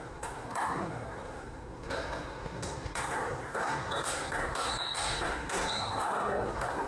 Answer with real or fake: fake